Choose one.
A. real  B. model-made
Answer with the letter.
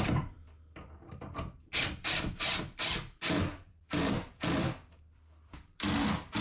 B